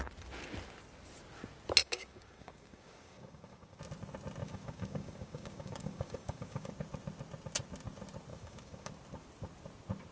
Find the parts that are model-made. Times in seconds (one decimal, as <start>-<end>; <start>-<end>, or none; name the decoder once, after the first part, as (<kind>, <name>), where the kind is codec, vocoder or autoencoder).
1.8-3.8 (codec, DAC); 4.4-6.7; 8.3-8.9

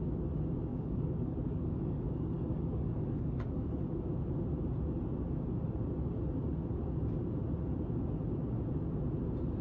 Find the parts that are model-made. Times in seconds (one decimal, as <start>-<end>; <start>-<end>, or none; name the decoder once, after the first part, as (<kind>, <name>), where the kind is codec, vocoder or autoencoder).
0.7-3.7 (codec, DAC)

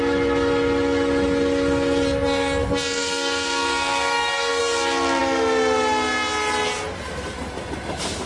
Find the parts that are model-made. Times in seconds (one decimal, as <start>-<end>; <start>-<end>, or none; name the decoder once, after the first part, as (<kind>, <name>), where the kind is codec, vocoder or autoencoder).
2.6-4.6 (codec, DAC)

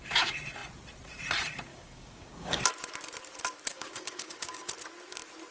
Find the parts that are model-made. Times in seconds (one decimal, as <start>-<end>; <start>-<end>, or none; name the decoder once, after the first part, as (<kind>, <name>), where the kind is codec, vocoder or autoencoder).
1.7-2.6 (codec, DAC); 3.7-4.7

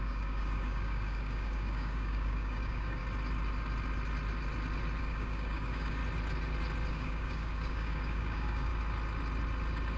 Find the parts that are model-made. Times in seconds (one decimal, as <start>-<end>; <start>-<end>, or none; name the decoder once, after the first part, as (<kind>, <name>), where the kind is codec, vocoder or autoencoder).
0.0-3.0 (codec, DAC); 5.0-6.0; 6.9-8.7

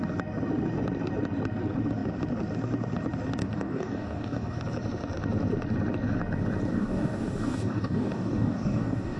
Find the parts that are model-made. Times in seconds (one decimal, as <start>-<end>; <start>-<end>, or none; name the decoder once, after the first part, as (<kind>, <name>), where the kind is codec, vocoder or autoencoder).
3.4-4.6 (codec, DAC); 6.7-9.2

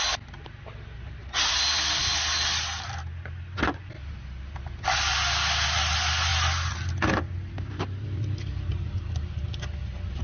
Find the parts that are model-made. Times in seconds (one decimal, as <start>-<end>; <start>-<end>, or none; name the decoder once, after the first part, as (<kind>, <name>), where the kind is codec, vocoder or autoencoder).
none